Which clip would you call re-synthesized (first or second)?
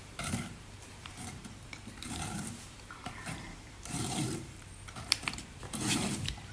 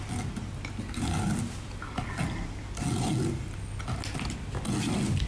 first